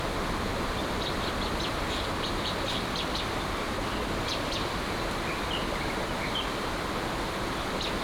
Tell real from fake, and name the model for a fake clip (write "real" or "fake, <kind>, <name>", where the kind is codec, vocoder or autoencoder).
real